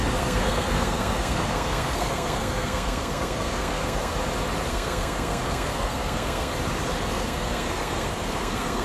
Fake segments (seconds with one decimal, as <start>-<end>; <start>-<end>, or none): 0.0-4.1; 4.7-6.5; 7.1-8.8